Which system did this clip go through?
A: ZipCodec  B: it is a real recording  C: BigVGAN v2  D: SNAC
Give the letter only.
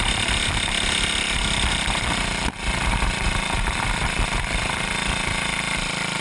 C